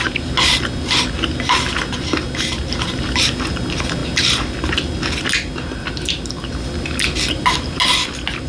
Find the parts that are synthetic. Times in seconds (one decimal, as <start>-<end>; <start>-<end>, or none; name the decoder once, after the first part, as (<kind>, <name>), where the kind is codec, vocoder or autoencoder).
none